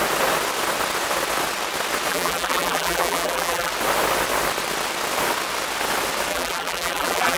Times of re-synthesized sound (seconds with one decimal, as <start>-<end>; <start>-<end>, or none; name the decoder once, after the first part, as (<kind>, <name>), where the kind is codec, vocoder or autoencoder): 2.1-3.7 (vocoder, BigVGAN v2); 6.3-7.4